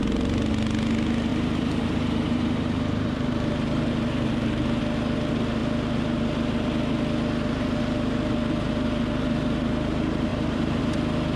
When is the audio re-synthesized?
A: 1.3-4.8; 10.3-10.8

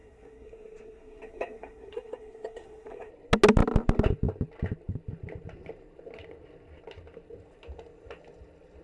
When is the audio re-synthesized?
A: 0.0-3.1

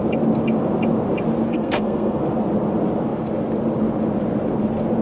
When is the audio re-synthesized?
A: 1.5-2.2

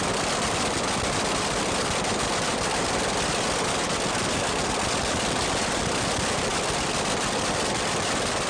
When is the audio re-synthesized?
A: none

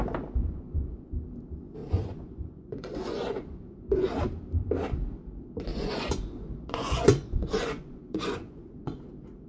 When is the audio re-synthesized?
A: 0.4-1.1; 1.8-4.1; 5.7-9.1

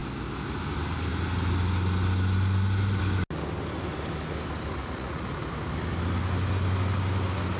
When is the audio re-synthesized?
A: 4.8-5.4

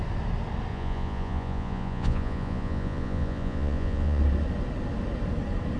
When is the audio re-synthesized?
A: 0.7-4.2